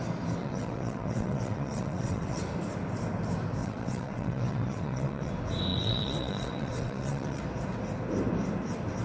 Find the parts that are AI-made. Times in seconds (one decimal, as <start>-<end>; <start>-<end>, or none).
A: 0.4-2.4; 3.6-5.3; 5.7-7.4